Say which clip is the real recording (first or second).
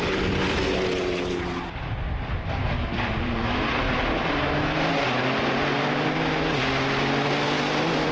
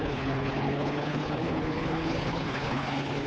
first